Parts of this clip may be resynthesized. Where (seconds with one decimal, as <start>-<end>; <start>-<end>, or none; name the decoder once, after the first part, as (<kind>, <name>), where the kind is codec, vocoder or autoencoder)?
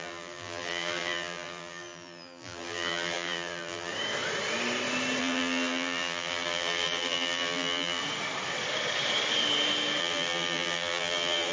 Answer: 0.0-3.9 (vocoder, BigVGAN v2); 5.2-8.0; 10.0-11.5